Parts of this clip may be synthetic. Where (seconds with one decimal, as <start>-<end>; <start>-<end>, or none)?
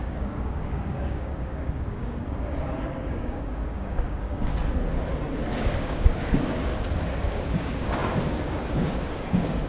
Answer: 0.0-4.5; 5.5-6.7; 7.2-9.7